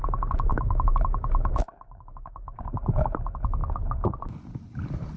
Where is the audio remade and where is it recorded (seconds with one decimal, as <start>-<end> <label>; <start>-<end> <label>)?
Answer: 0.0-0.5 recorded; 0.5-2.6 remade; 2.6-5.2 recorded